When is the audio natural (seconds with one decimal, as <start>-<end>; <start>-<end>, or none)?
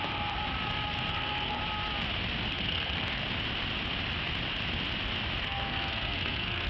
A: 0.4-1.1; 1.6-2.5; 3.2-5.4